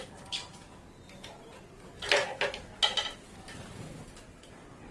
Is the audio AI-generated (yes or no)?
no